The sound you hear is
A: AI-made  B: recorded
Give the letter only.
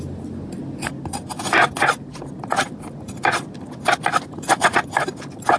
B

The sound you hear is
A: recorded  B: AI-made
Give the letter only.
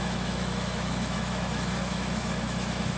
B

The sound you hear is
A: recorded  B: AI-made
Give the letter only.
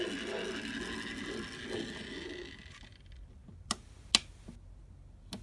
A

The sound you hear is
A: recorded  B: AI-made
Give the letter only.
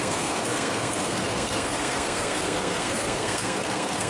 B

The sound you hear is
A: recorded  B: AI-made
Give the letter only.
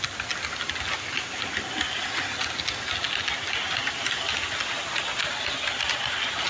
A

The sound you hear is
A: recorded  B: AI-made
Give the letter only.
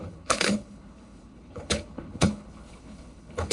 B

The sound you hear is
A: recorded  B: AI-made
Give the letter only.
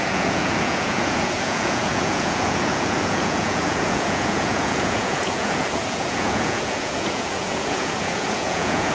B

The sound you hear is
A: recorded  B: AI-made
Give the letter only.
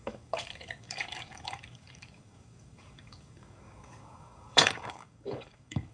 B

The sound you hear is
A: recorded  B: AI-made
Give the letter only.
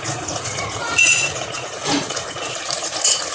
B